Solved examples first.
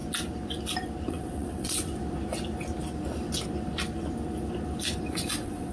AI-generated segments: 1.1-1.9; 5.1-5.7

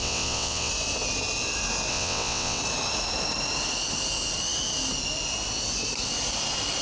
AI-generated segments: 0.0-0.7; 1.9-2.6

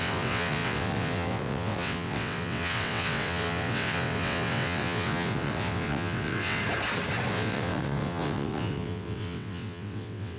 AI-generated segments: 0.0-6.6; 7.3-10.4